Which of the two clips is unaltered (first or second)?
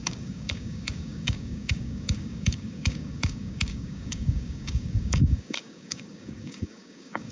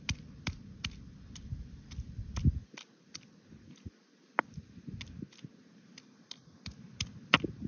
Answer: second